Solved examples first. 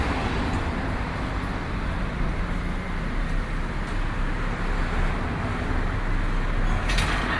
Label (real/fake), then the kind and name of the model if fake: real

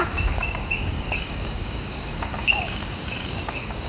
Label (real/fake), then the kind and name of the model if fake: fake, codec, DAC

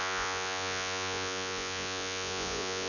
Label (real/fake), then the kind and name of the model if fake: fake, vocoder, Vocos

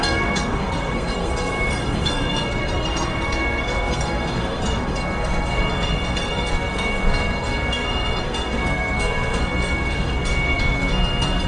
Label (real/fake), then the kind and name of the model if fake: fake, codec, SNAC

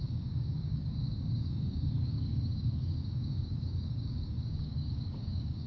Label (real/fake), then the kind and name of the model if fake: fake, codec, DAC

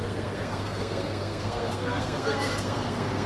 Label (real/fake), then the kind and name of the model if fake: fake, codec, SNAC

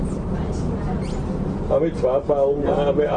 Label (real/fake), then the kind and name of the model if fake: real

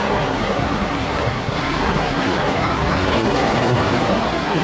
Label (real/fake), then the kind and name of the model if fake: fake, codec, SNAC